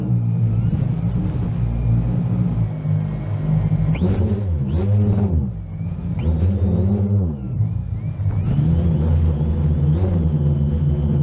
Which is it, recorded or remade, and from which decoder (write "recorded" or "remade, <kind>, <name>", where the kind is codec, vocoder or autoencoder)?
recorded